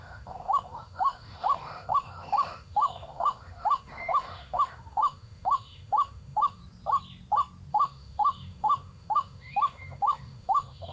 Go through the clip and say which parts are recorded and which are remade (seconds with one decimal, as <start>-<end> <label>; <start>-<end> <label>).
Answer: 0.0-6.6 remade; 6.6-7.7 recorded; 7.7-10.9 remade